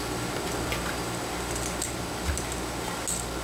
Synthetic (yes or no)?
no